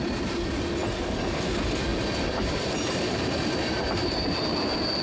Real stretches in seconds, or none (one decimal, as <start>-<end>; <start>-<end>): 0.0-0.8; 1.4-1.9; 4.2-5.0